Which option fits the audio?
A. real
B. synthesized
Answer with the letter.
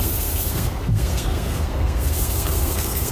B